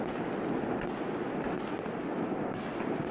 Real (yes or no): yes